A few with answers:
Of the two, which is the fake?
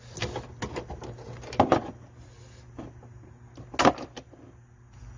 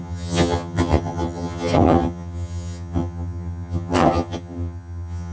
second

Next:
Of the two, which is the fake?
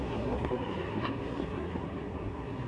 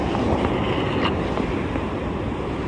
first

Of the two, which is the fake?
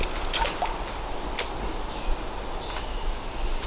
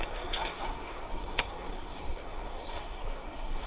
second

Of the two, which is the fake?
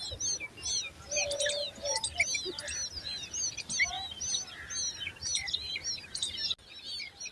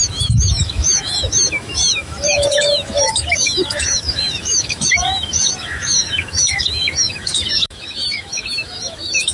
second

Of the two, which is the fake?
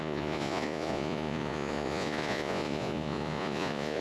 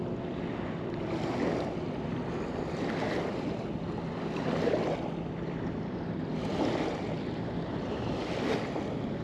first